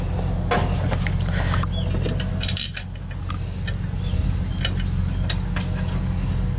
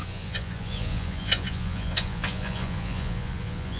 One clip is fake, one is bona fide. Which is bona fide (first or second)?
first